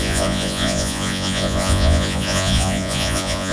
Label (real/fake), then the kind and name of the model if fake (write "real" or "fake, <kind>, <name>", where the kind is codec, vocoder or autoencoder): fake, vocoder, Vocos